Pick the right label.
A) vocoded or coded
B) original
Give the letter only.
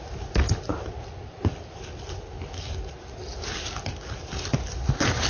B